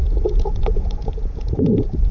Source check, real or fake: fake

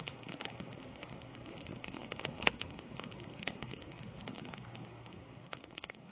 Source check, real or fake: fake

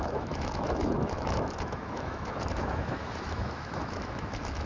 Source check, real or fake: fake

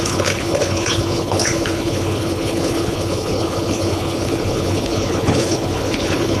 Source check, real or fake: fake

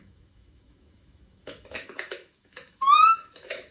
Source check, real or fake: fake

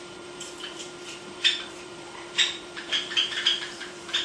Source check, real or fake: fake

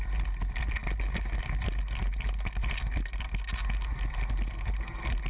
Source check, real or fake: real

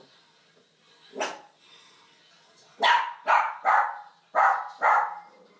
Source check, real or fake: real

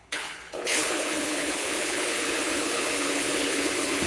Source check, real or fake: fake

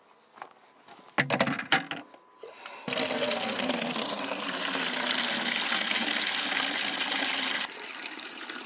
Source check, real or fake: real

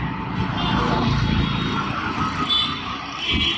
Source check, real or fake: real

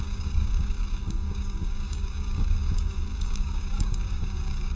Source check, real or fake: fake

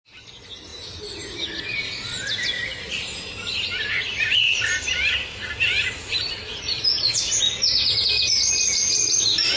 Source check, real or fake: real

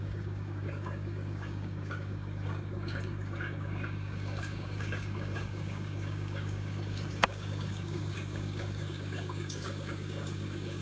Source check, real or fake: fake